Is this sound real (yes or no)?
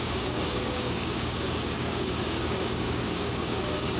no